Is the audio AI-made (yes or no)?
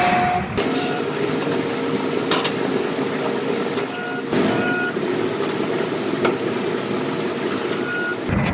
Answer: no